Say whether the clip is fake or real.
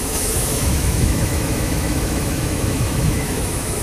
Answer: fake